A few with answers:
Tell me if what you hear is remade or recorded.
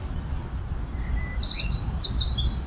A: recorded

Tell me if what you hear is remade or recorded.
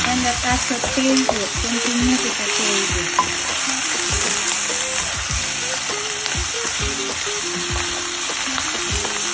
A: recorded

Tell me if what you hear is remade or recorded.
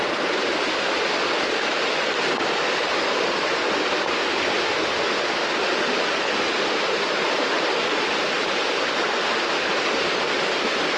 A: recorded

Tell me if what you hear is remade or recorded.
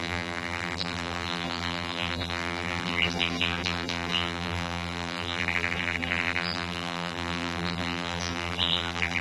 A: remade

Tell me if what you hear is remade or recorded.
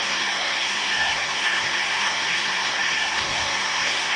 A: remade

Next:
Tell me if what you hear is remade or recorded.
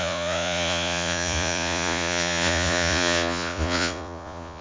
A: remade